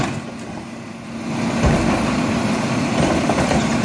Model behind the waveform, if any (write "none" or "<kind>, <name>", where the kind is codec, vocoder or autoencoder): vocoder, BigVGAN v2